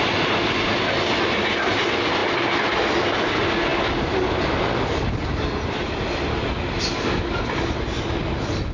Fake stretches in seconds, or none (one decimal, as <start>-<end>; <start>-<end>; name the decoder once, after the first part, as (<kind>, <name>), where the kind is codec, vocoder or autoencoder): none